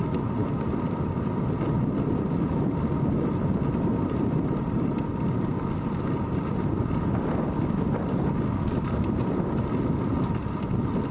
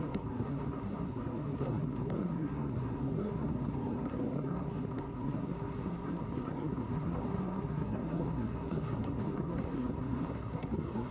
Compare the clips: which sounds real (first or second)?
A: first